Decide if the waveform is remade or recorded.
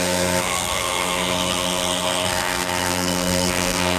remade